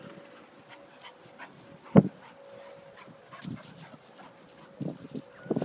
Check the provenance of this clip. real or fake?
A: real